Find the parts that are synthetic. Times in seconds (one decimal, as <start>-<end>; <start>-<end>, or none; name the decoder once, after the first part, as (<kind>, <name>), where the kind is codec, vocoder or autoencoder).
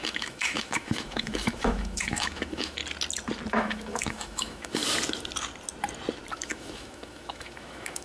0.0-2.8 (autoencoder, DAC-VAE); 3.5-4.8; 6.3-8.0